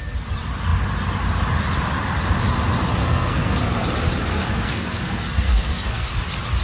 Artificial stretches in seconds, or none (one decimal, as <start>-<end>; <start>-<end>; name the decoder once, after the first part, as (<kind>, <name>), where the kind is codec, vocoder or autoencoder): 3.0-3.6 (codec, SNAC); 4.3-6.1